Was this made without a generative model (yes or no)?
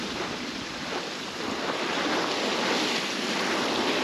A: no